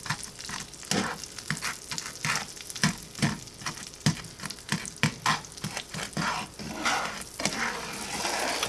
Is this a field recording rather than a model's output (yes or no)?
yes